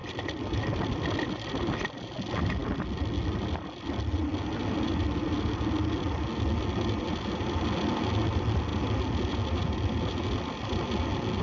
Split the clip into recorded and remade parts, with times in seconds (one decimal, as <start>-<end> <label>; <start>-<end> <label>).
0.0-11.4 recorded